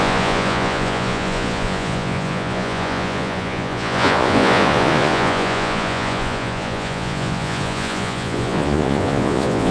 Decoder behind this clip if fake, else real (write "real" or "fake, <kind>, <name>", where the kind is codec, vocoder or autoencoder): fake, vocoder, Vocos